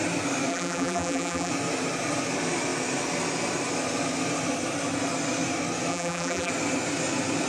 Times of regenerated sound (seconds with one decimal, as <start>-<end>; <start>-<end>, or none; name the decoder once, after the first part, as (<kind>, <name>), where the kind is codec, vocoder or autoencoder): 0.5-1.5 (vocoder, BigVGAN v2); 5.9-6.5